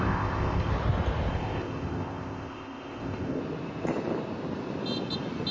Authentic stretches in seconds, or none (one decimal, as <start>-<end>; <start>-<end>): 0.7-1.3; 3.4-5.5